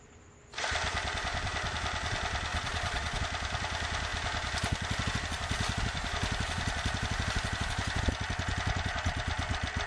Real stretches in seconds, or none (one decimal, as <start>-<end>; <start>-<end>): 0.0-2.5; 3.2-9.9